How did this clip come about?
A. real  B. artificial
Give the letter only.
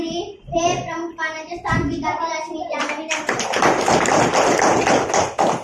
A